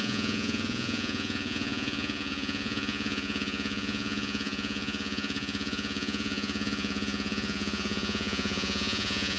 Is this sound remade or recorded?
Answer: remade